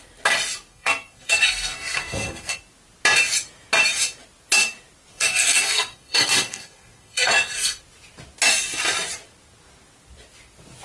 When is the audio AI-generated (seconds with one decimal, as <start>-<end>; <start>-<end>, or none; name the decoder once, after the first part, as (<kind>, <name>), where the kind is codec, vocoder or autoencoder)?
0.7-2.6 (codec, SNAC); 5.1-7.8